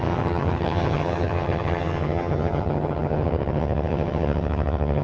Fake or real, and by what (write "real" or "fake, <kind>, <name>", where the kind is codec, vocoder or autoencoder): fake, vocoder, HiFi-GAN